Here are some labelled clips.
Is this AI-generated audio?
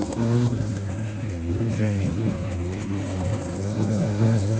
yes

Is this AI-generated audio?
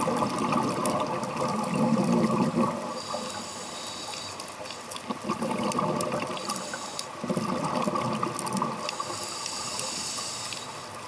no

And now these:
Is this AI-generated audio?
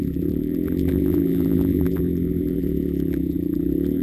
yes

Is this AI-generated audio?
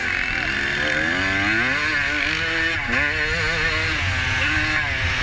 no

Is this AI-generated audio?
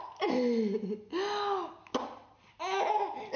no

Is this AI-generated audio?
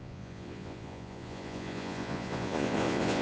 yes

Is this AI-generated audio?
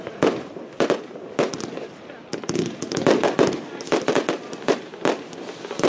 no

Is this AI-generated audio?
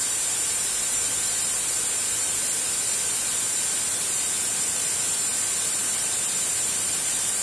yes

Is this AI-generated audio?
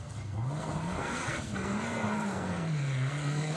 yes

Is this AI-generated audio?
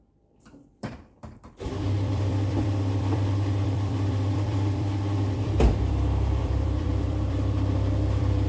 yes